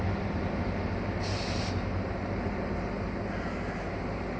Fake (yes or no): no